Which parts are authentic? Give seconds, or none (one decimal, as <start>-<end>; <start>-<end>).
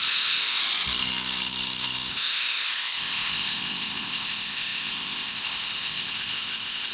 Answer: 0.6-2.1